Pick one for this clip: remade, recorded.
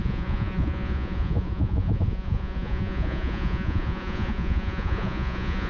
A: remade